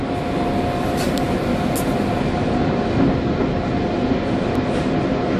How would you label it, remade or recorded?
recorded